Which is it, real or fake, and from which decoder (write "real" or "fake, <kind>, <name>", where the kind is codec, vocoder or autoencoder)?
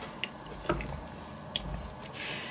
real